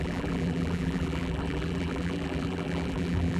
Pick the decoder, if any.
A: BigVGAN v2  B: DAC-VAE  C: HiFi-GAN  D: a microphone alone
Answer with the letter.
A